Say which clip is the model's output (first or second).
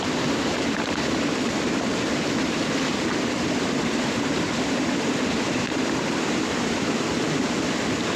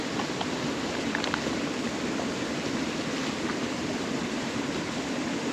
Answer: first